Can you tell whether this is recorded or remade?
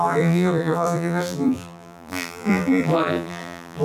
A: remade